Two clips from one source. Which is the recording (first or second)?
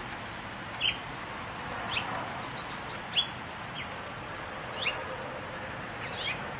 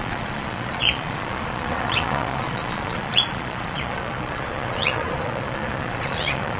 first